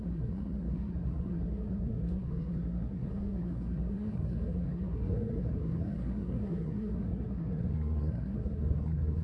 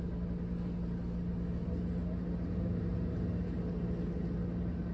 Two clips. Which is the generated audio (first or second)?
first